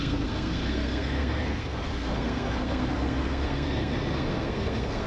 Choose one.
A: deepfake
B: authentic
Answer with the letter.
A